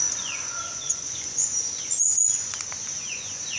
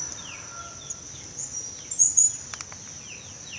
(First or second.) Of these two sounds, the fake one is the first